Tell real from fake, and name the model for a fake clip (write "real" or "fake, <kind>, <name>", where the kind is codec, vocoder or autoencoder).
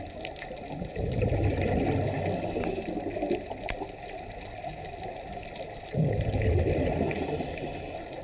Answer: real